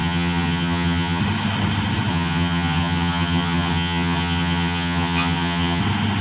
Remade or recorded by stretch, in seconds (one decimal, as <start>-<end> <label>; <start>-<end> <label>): 0.0-1.2 remade; 1.2-2.1 recorded; 2.1-5.8 remade; 5.8-6.2 recorded